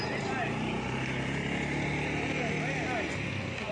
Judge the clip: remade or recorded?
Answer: recorded